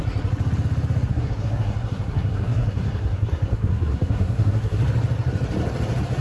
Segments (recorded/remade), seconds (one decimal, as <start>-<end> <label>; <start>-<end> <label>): 0.0-1.1 recorded; 1.1-4.8 remade; 4.8-6.2 recorded